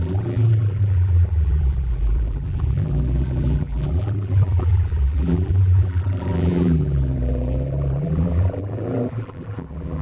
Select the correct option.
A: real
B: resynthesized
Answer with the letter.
B